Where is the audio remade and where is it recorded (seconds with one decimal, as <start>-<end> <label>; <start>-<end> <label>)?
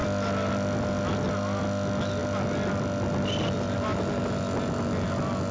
0.0-5.5 recorded